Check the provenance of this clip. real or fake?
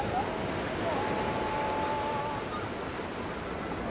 real